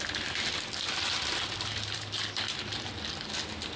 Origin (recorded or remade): recorded